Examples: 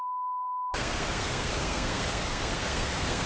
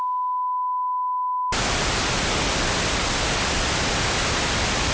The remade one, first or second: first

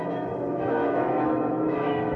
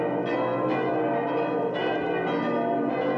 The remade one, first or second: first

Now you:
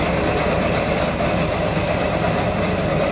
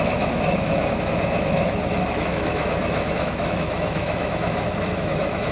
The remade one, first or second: second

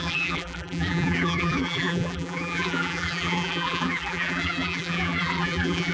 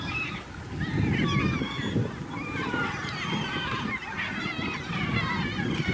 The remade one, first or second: first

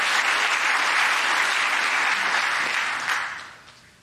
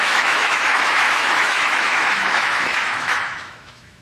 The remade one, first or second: second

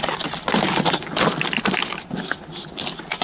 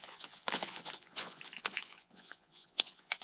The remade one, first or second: second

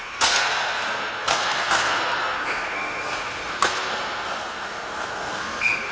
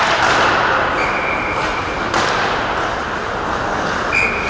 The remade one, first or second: first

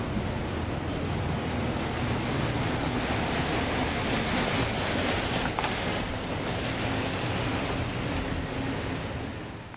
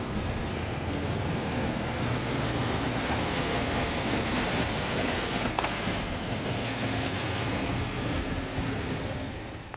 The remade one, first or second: second